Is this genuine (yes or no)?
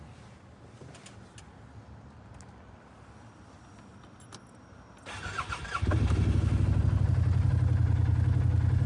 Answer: yes